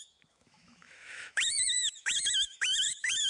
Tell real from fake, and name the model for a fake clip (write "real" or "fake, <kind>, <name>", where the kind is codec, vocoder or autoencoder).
fake, autoencoder, DAC-VAE